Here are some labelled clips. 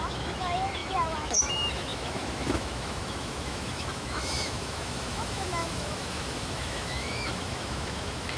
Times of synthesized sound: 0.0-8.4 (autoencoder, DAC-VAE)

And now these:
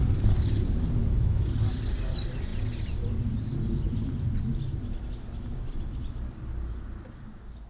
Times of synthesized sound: 1.0-1.5 (autoencoder, DAC-VAE)

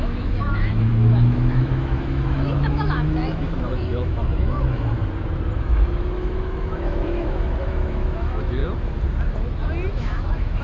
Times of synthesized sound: 0.0-5.0 (autoencoder, DAC-VAE); 5.6-8.6; 9.9-10.6

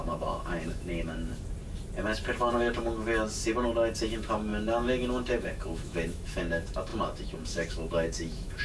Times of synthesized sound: 0.0-1.3 (autoencoder, DAC-VAE); 2.5-3.1; 4.1-8.6

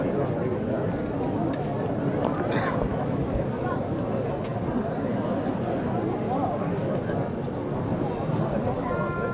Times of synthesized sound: 2.9-3.5 (autoencoder, DAC-VAE)